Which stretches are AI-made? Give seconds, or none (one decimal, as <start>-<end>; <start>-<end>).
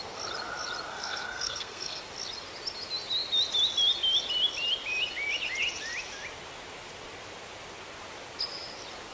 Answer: 0.9-2.0